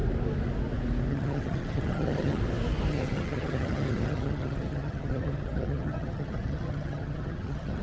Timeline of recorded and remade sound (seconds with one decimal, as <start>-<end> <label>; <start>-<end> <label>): 0.0-1.1 recorded; 1.1-2.4 remade; 2.4-2.9 recorded; 2.9-7.8 remade